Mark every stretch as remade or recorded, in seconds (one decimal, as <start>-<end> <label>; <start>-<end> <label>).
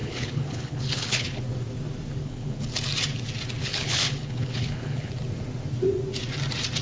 0.0-1.4 remade; 1.4-2.2 recorded; 2.2-2.7 remade; 2.7-3.6 recorded; 3.6-5.1 remade; 5.1-6.8 recorded